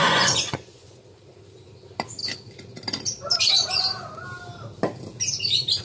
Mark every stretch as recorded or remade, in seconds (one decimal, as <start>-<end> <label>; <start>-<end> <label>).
0.0-1.0 remade; 1.0-5.8 recorded